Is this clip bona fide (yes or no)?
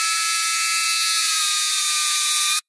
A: no